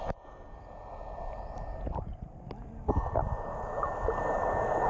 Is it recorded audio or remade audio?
recorded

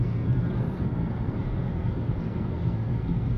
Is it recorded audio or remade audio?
remade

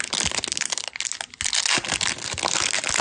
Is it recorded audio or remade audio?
recorded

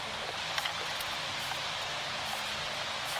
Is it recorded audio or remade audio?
recorded